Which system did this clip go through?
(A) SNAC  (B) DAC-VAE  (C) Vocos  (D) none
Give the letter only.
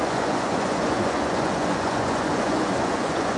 C